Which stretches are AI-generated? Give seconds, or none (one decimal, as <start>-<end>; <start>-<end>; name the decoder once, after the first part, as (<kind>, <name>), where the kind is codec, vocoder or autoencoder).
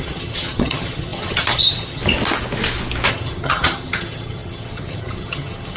0.0-2.0 (vocoder, HiFi-GAN); 3.1-5.8